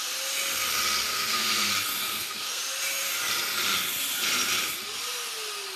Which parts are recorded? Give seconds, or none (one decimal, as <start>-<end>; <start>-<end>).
0.0-1.1; 1.7-2.1; 2.6-5.8